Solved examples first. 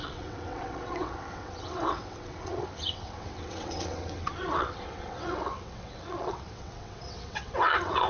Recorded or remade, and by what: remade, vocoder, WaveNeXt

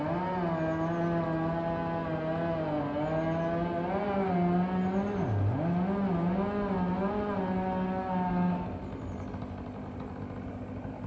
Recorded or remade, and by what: recorded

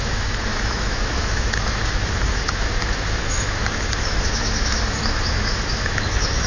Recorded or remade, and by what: remade, autoencoder, DAC-VAE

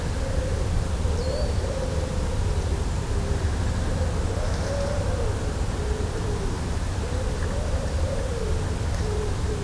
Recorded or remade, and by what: recorded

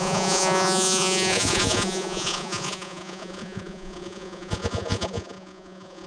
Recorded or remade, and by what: remade, vocoder, Vocos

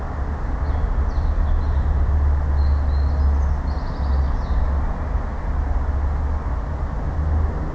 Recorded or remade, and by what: recorded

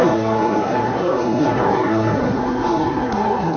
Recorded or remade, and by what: remade, codec, SNAC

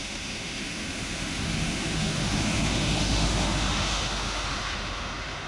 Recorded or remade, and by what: remade, autoencoder, DAC-VAE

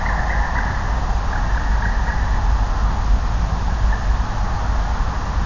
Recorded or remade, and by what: recorded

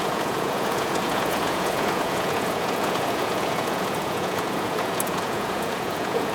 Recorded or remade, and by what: remade, vocoder, Vocos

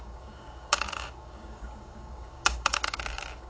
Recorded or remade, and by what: remade, codec, DAC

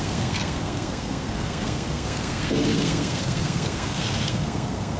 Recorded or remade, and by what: remade, codec, SNAC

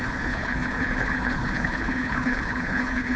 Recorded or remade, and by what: remade, codec, HILCodec